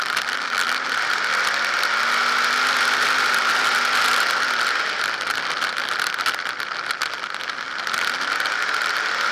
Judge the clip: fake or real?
real